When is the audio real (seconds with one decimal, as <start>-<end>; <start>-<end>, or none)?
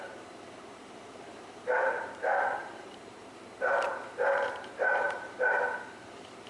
none